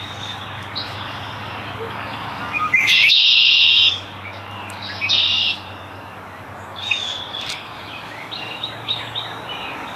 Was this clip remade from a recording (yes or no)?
yes